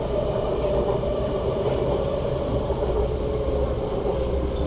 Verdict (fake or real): real